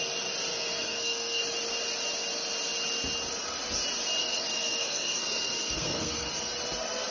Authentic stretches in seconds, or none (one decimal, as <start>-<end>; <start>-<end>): 0.0-0.5; 1.4-4.2; 6.3-7.1